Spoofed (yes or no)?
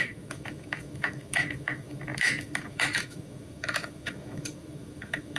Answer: yes